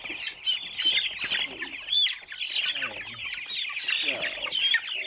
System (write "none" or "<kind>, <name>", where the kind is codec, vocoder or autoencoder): none